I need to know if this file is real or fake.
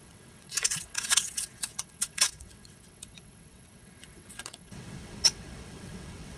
fake